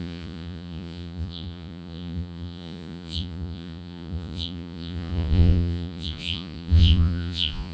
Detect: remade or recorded remade